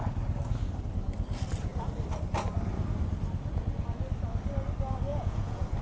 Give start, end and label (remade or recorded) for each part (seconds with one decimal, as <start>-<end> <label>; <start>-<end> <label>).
0.0-5.1 recorded; 5.1-5.8 remade